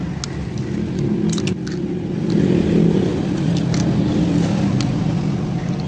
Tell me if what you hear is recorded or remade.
recorded